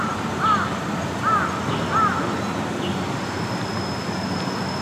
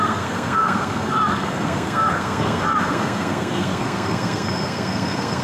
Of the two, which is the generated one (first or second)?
second